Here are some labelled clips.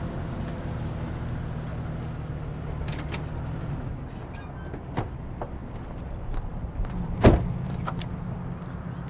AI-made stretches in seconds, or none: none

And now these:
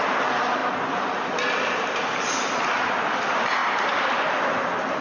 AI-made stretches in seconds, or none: none

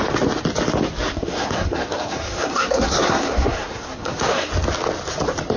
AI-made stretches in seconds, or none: 1.1-4.5 (codec, SNAC)

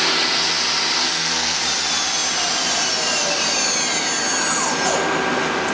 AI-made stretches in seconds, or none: 1.0-1.6 (codec, SNAC)

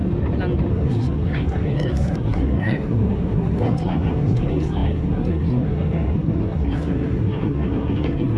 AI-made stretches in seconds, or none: 0.7-8.4 (codec, SNAC)

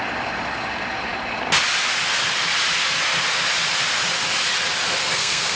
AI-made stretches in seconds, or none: 5.0-5.6 (codec, SNAC)

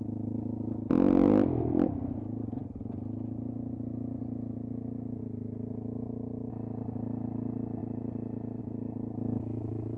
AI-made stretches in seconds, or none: none

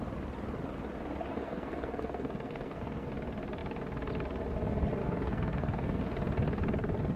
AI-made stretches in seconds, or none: 1.3-3.1 (codec, SNAC); 5.0-6.0